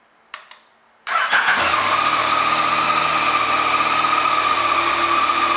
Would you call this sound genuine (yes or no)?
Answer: yes